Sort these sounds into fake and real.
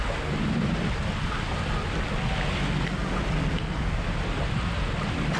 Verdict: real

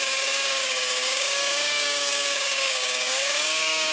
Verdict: fake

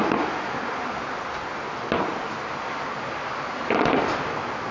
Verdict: real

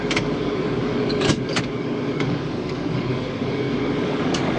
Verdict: fake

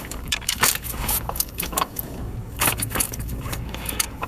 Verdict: fake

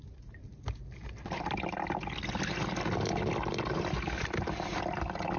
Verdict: real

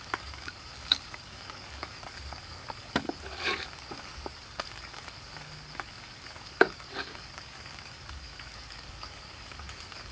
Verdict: fake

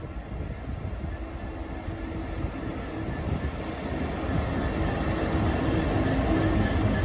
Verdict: real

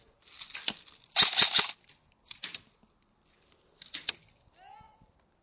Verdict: real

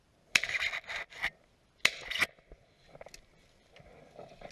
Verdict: real